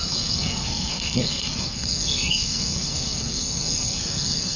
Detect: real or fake fake